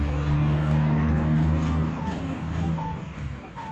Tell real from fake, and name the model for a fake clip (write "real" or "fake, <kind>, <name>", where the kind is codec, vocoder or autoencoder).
fake, codec, DAC